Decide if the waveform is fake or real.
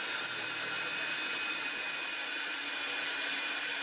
real